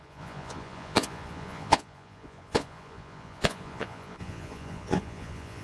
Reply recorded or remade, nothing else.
remade